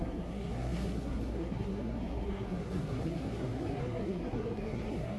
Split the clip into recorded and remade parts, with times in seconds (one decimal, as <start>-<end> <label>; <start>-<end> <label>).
0.0-5.2 remade